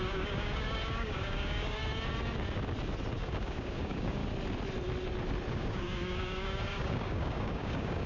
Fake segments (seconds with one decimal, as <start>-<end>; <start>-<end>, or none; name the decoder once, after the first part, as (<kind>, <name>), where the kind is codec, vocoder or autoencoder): 0.0-1.8 (codec, DAC); 3.1-4.2; 5.5-8.1